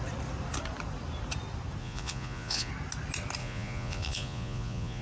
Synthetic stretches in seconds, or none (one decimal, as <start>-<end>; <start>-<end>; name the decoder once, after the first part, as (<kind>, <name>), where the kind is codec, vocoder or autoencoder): 1.8-2.7 (vocoder, Vocos); 3.4-5.0